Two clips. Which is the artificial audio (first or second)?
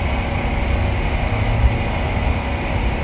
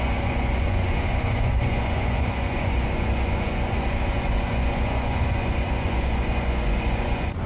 second